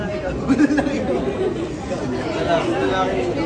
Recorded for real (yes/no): yes